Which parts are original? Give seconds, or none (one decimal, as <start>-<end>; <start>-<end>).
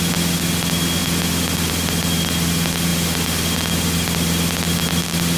0.0-5.4